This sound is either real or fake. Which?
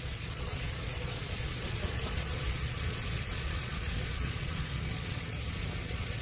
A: fake